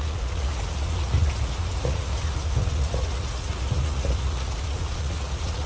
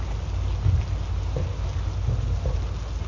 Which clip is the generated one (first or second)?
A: first